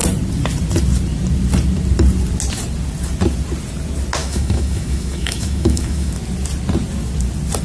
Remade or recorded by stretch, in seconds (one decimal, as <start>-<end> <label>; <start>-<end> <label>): 0.0-4.2 recorded; 4.2-6.1 remade; 6.1-7.6 recorded